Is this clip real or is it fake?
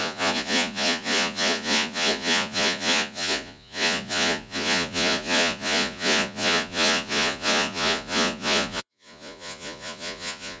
fake